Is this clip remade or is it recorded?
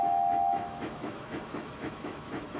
remade